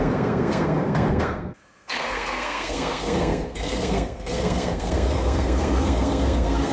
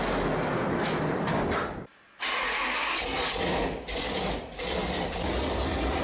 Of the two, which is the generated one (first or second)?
first